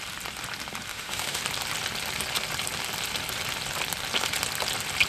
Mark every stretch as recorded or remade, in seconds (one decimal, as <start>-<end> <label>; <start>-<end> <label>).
0.0-0.9 recorded; 0.9-1.4 remade; 1.4-5.1 recorded